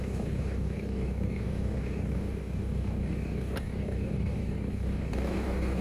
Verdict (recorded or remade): remade